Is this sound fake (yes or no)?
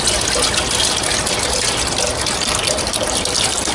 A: no